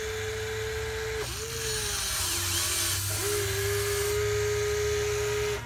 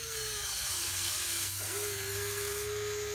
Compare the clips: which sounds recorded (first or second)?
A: first